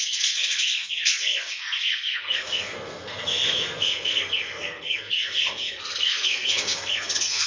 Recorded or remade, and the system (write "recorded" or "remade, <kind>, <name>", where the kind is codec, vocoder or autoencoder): remade, codec, SNAC